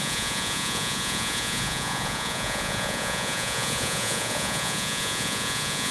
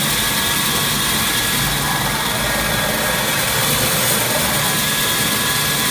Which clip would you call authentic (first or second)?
second